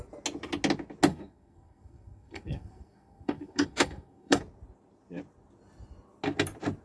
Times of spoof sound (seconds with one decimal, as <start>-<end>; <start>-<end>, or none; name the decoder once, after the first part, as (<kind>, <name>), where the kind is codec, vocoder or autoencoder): 1.1-4.4 (codec, SNAC)